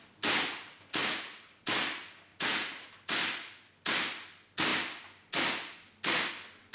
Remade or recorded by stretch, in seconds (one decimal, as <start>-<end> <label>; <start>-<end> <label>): 0.0-1.0 recorded; 1.0-1.6 remade; 1.6-2.3 recorded; 2.3-2.9 remade; 2.9-6.7 recorded